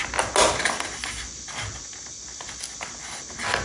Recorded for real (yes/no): yes